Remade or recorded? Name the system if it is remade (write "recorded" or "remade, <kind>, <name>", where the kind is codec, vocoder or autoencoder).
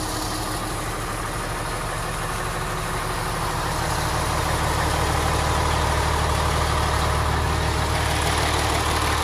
recorded